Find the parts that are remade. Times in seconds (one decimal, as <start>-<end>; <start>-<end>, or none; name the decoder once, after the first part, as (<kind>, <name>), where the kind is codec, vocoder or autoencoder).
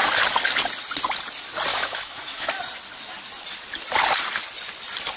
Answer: 1.7-2.5 (autoencoder, DAC-VAE)